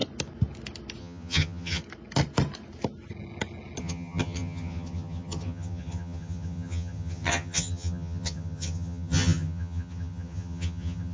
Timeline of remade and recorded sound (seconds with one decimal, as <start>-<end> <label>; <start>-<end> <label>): 0.0-1.0 recorded; 1.0-1.8 remade; 1.8-3.8 recorded; 3.8-11.1 remade

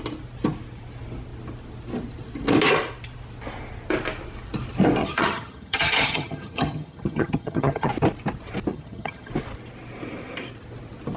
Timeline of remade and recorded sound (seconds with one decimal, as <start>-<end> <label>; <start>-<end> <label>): 0.0-5.0 recorded; 5.0-7.9 remade; 7.9-8.7 recorded; 8.7-9.3 remade; 9.3-11.2 recorded